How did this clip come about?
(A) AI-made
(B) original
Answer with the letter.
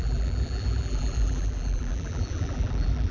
A